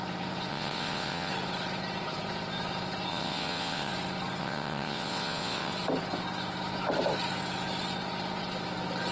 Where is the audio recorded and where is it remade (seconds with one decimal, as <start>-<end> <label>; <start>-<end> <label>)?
0.0-0.5 recorded; 0.5-1.3 remade; 1.3-3.1 recorded; 3.1-3.9 remade; 3.9-4.4 recorded; 4.4-5.7 remade; 5.7-9.1 recorded